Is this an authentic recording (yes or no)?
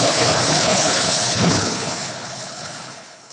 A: no